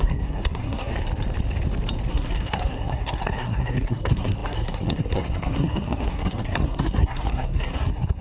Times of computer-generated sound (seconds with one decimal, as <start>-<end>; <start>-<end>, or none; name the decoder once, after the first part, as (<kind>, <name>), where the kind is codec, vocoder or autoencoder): 0.0-0.9 (codec, SNAC); 2.1-8.2